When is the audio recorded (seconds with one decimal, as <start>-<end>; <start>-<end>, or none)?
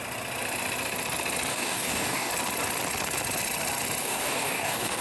0.0-1.5; 2.3-4.0